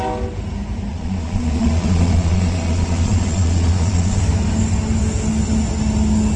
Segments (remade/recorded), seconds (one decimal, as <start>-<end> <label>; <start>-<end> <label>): 0.0-0.9 recorded; 0.9-4.2 remade; 4.2-6.4 recorded